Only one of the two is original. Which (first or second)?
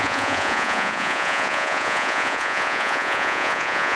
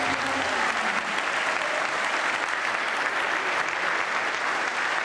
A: second